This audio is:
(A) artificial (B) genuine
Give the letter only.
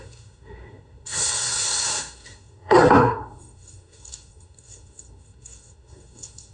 A